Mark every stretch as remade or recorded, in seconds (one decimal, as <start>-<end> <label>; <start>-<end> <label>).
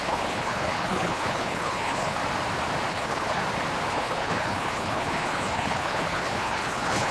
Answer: 0.0-2.2 remade; 2.2-2.9 recorded; 2.9-3.4 remade; 3.4-3.9 recorded; 3.9-7.1 remade